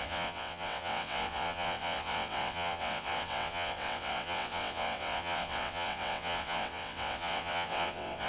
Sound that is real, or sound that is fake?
fake